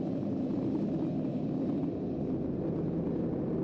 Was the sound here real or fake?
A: real